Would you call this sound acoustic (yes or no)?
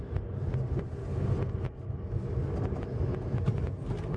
yes